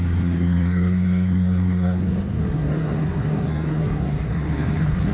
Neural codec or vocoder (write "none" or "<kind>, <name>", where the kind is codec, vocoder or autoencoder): codec, SNAC